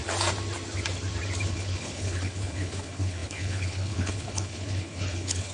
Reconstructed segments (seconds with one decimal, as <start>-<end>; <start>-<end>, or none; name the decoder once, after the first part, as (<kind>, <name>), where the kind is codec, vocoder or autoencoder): 1.5-5.5 (codec, HILCodec)